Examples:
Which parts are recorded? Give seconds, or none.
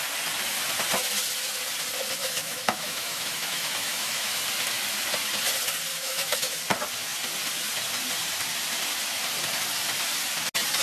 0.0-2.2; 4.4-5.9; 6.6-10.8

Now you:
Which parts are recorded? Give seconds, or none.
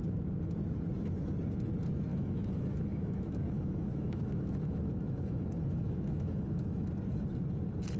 0.0-2.1; 6.9-8.0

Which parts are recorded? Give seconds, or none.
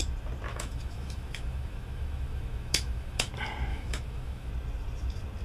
0.0-0.5; 3.3-3.7; 4.5-5.4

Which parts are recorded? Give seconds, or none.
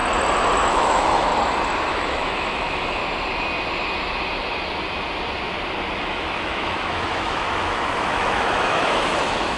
0.0-0.7; 1.3-1.9; 3.0-6.0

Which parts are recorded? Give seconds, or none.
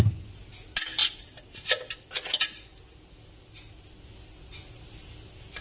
0.0-5.6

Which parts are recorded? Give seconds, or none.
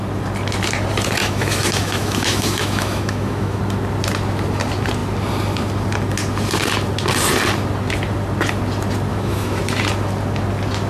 0.0-1.2; 3.6-9.1; 9.6-10.9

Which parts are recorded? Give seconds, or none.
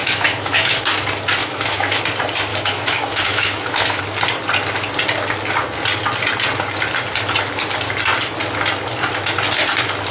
0.7-1.4; 2.0-2.5; 4.0-10.1